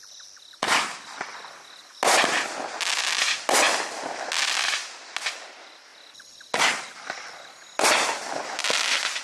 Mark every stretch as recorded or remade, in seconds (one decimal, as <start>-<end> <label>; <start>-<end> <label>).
0.0-9.2 recorded

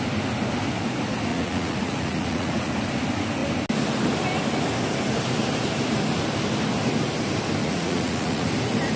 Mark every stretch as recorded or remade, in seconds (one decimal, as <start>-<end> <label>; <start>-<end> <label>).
0.0-1.3 recorded; 1.3-2.7 remade; 2.7-7.6 recorded; 7.6-8.5 remade; 8.5-9.0 recorded

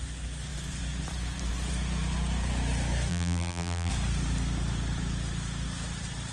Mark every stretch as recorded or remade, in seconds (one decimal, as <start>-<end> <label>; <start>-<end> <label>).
0.0-3.1 recorded; 3.1-3.9 remade; 3.9-6.3 recorded

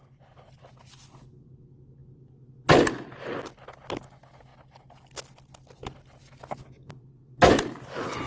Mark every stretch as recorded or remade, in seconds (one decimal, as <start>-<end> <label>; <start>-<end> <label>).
0.0-8.3 recorded

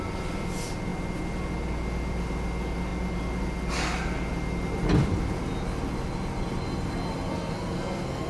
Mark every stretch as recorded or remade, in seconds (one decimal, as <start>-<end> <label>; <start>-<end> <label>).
0.0-7.3 recorded; 7.3-8.3 remade

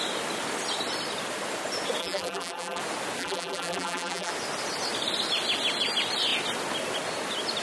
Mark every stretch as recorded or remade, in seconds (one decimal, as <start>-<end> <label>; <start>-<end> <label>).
0.0-2.0 recorded; 2.0-2.8 remade; 2.8-3.2 recorded; 3.2-4.3 remade; 4.3-7.6 recorded

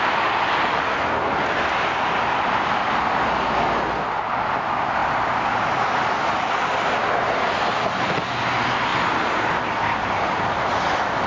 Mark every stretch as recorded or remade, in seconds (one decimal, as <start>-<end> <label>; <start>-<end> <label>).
0.0-11.3 recorded

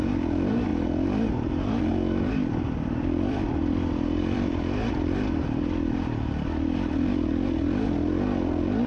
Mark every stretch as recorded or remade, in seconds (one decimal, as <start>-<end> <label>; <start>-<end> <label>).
0.0-0.7 recorded; 0.7-1.3 remade; 1.3-1.9 recorded; 1.9-5.4 remade; 5.4-8.9 recorded